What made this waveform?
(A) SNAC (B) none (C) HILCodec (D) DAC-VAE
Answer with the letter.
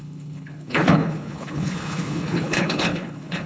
C